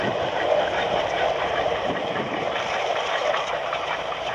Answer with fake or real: fake